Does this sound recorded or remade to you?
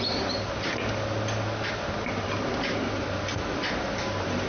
recorded